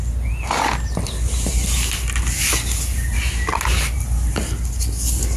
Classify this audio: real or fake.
real